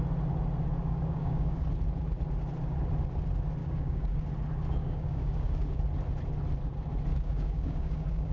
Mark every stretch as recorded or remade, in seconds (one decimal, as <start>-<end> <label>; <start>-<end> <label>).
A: 0.0-0.8 recorded; 0.8-1.6 remade; 1.6-3.6 recorded; 3.6-4.2 remade; 4.2-4.8 recorded; 4.8-5.8 remade; 5.8-7.1 recorded; 7.1-8.3 remade